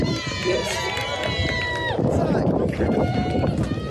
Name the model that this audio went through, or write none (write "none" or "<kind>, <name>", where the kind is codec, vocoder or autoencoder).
none